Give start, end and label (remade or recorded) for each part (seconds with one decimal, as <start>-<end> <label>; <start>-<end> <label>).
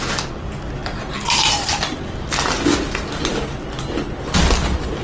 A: 0.0-5.0 recorded